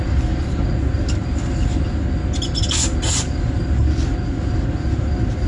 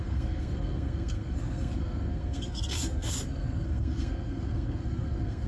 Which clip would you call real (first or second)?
first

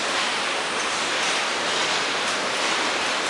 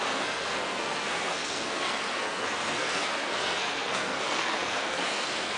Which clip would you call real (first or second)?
first